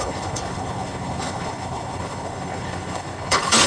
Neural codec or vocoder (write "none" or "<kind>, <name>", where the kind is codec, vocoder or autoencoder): codec, HILCodec